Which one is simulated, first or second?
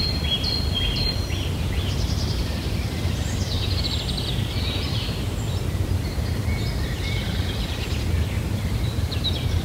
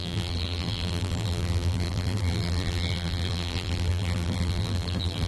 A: second